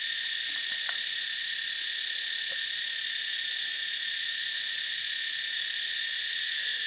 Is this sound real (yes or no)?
no